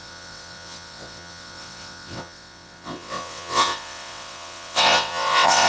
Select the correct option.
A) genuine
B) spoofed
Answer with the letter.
B